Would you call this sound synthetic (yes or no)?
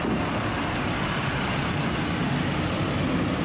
no